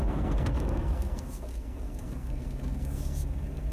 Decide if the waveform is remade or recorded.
remade